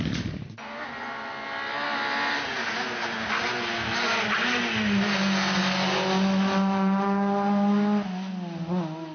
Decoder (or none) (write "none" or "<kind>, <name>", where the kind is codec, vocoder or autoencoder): none